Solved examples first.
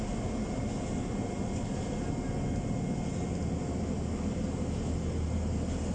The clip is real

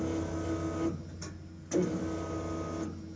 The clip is real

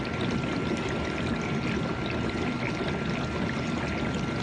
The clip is real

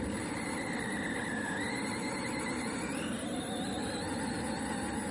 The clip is real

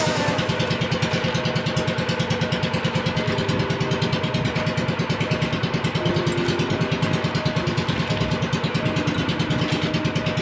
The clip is real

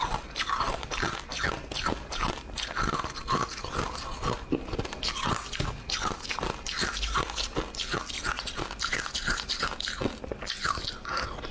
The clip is real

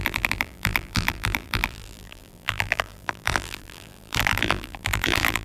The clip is fake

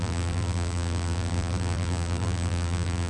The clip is fake